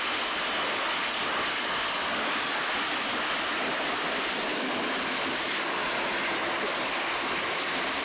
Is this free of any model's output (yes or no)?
yes